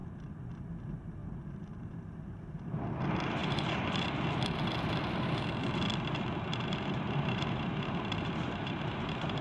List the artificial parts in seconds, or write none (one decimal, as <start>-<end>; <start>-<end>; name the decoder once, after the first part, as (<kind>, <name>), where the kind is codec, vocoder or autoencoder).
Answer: 1.2-2.8 (vocoder, BigVGAN v2); 3.4-4.3; 6.5-9.4